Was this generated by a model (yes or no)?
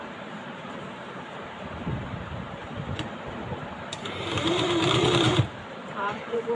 yes